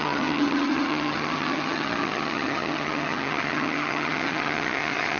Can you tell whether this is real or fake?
fake